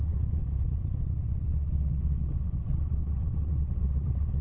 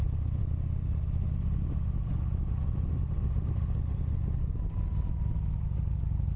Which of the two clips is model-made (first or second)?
first